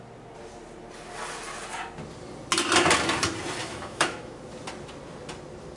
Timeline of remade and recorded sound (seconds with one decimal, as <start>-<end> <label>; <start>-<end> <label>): 0.0-3.6 recorded; 3.6-4.4 remade; 4.4-5.8 recorded